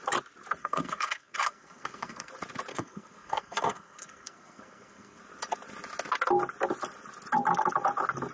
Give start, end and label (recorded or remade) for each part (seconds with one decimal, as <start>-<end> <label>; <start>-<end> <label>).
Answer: 0.0-0.6 recorded; 0.6-2.3 remade; 2.3-2.7 recorded; 2.7-5.2 remade; 5.2-8.3 recorded